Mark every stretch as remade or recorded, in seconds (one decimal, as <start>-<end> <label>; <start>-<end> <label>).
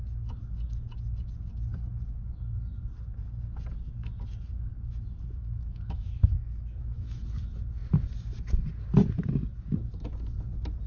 0.0-5.4 recorded; 5.4-7.2 remade; 7.2-10.9 recorded